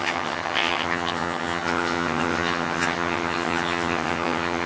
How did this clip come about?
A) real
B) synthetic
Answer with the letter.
B